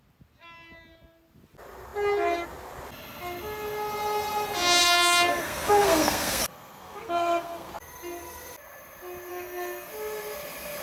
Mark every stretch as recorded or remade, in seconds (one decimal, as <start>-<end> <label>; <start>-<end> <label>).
0.0-4.8 recorded; 4.8-7.7 remade; 7.7-9.3 recorded; 9.3-9.9 remade; 9.9-10.8 recorded